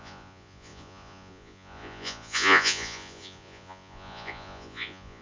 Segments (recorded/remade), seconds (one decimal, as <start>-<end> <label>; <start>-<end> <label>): 0.0-5.2 remade